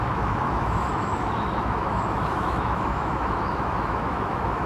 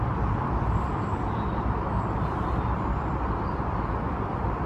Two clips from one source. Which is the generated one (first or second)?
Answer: first